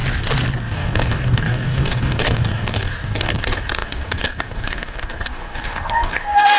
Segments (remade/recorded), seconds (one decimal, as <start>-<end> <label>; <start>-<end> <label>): 0.0-0.6 recorded; 0.6-6.6 remade